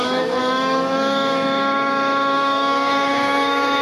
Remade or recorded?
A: remade